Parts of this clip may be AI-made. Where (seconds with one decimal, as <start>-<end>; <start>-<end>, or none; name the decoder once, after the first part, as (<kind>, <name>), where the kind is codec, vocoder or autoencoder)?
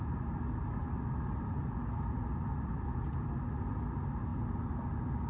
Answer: none